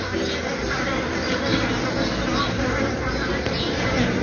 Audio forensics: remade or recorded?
recorded